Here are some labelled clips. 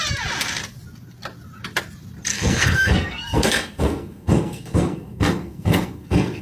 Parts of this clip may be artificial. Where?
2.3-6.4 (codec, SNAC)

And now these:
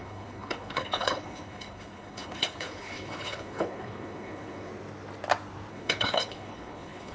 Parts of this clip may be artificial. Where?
0.0-4.7 (codec, HILCodec); 5.7-7.1